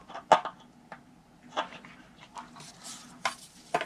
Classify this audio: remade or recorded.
recorded